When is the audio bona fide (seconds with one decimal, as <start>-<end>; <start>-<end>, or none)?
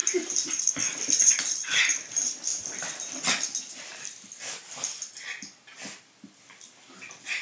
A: 0.6-7.4